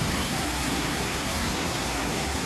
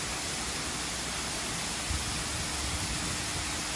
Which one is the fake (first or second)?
first